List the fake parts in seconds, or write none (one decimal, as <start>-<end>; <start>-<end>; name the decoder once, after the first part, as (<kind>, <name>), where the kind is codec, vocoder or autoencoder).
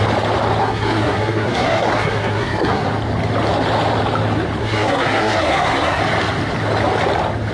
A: 0.6-2.9 (codec, SNAC); 4.6-6.0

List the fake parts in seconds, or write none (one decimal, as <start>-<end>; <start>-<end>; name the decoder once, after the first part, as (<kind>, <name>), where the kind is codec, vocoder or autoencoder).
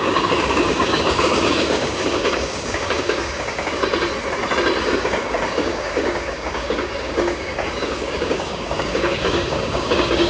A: 0.0-3.8 (codec, DAC); 4.9-10.3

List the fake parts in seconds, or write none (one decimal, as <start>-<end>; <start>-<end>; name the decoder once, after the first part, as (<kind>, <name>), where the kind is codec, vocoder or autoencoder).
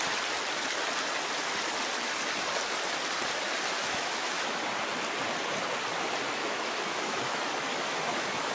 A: 3.8-4.6 (autoencoder, DAC-VAE); 6.4-8.5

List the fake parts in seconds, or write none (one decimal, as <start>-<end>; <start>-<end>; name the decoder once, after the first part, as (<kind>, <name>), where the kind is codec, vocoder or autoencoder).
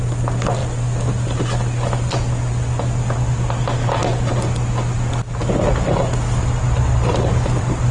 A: none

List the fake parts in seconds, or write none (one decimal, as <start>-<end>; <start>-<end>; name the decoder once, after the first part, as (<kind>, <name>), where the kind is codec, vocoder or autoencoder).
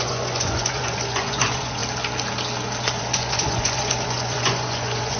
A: 0.0-1.8 (vocoder, Vocos); 3.0-5.2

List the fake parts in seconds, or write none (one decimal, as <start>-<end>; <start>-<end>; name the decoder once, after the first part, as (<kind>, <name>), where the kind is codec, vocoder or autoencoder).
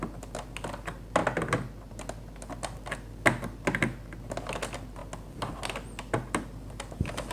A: none